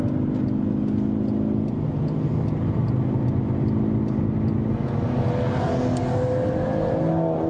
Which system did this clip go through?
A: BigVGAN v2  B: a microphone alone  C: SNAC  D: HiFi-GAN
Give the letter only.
B